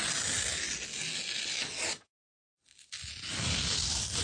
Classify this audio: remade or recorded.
recorded